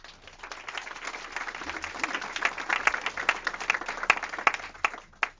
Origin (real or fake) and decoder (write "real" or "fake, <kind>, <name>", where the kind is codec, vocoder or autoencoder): real